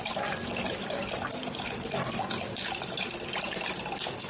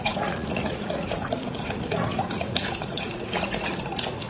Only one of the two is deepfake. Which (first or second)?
second